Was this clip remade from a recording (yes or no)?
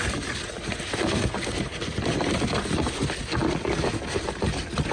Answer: no